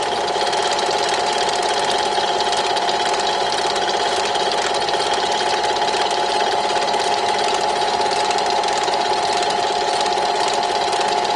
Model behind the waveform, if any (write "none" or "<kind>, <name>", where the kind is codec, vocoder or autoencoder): none